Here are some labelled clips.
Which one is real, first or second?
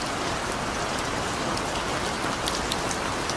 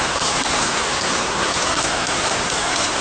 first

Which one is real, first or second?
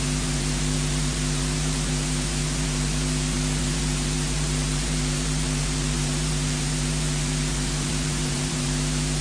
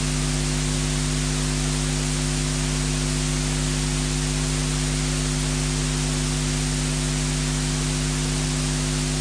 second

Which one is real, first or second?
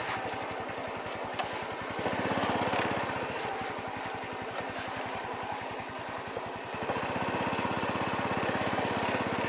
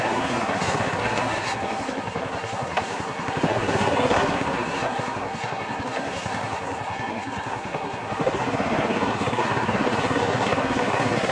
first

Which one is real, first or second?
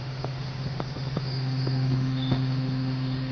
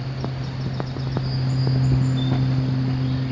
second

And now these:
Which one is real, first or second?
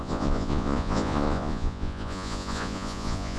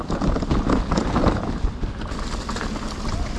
second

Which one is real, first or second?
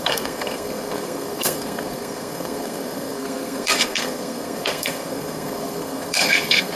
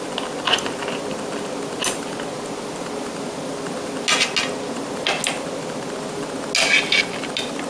second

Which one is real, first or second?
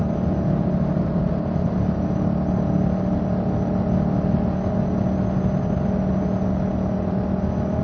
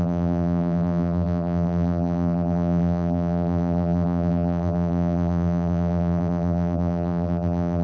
first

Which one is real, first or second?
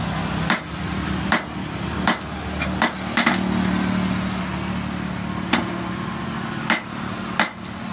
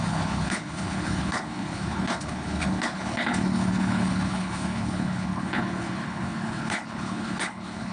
first